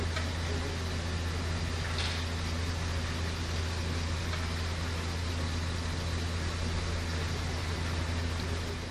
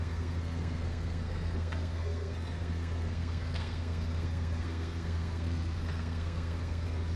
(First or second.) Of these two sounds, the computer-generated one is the second